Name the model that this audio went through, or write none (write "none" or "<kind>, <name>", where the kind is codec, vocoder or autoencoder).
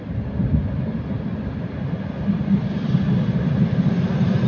none